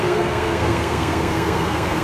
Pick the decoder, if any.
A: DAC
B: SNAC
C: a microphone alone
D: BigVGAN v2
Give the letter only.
B